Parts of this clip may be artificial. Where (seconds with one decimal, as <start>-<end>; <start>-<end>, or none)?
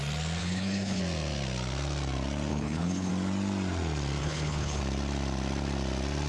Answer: 0.4-1.0; 2.5-3.1; 4.2-4.8